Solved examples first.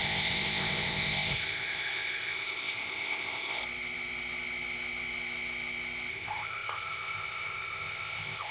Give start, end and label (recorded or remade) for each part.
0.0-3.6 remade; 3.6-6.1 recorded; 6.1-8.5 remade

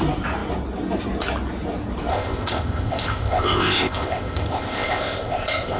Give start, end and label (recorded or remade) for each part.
0.0-2.1 recorded; 2.1-5.8 remade

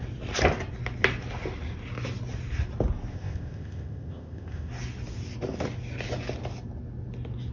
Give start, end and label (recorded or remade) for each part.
0.0-3.1 recorded; 3.1-4.7 remade; 4.7-7.5 recorded

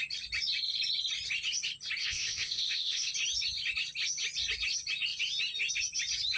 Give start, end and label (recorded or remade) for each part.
0.0-2.0 recorded; 2.0-3.1 remade; 3.1-6.4 recorded